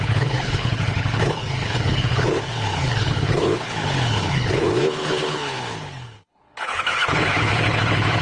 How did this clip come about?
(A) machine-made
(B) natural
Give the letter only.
A